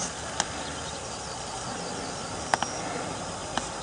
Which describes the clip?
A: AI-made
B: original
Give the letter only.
B